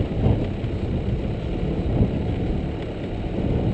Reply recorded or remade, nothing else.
recorded